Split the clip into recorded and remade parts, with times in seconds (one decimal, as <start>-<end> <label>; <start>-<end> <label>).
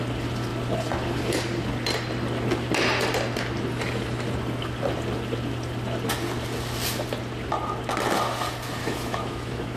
0.0-8.8 recorded; 8.8-9.8 remade